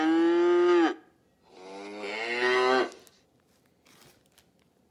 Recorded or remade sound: recorded